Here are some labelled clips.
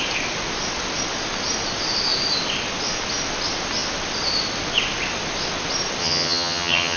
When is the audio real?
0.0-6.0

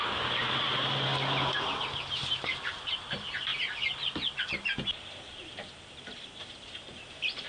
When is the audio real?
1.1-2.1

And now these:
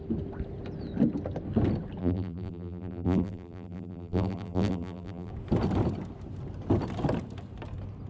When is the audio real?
0.0-2.0; 5.3-8.1

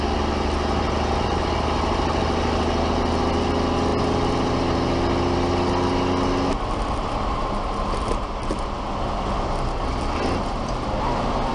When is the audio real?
0.0-11.5